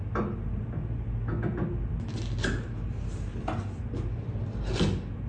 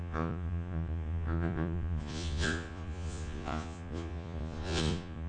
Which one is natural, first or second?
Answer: first